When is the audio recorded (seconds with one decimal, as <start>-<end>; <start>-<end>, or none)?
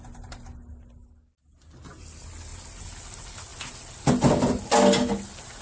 0.0-5.6